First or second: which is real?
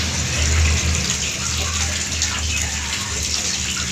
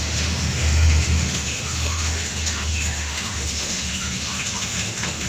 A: first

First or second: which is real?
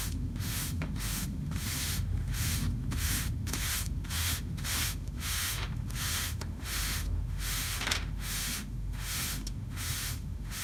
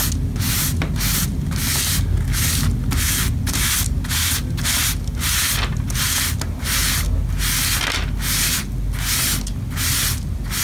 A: second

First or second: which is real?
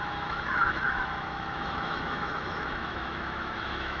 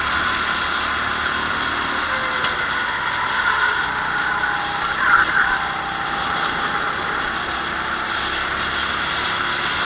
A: second